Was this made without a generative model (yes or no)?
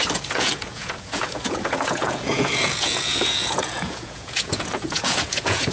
no